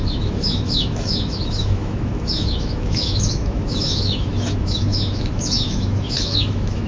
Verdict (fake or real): fake